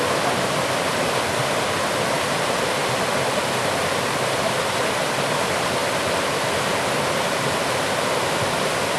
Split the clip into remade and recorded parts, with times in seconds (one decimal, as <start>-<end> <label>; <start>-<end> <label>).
0.0-9.0 recorded